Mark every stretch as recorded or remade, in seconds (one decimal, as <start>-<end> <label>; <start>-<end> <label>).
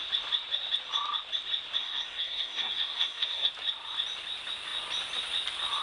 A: 0.0-1.8 recorded; 1.8-3.5 remade; 3.5-5.8 recorded